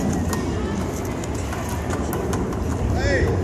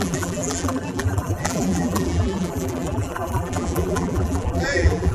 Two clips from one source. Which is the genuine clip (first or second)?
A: first